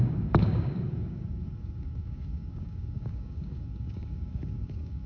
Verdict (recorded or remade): remade